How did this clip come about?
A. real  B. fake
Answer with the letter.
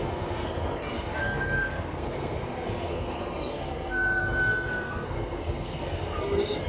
B